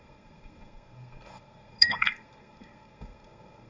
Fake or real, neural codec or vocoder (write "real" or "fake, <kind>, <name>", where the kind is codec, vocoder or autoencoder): fake, codec, SNAC